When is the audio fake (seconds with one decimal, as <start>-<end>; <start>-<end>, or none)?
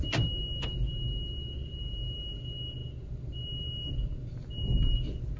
none